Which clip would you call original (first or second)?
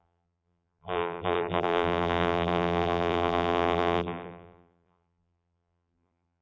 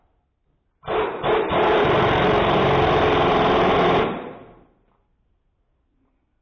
second